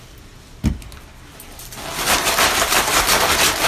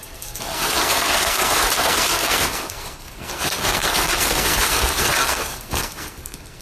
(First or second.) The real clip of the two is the first